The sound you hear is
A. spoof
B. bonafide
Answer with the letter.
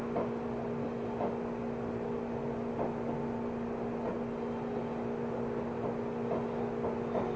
B